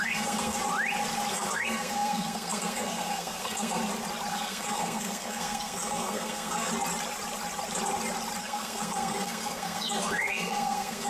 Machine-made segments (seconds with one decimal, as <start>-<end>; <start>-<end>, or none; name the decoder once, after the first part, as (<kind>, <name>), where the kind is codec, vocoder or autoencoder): 0.0-0.6 (codec, SNAC); 1.3-3.8; 4.3-6.7; 8.4-11.1

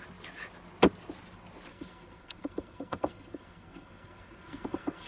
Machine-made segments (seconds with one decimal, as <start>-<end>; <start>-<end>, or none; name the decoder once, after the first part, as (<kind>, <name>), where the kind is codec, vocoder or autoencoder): 1.7-5.1 (codec, SNAC)

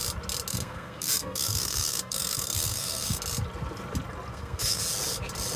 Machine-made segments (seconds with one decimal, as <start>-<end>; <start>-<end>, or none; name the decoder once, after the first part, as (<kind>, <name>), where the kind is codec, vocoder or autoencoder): 0.5-3.2 (codec, SNAC); 4.3-4.8

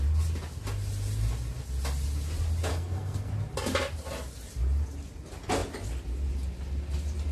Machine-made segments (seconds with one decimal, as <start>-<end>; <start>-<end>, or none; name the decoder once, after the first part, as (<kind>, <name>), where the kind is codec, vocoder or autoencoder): 2.7-3.3 (codec, SNAC)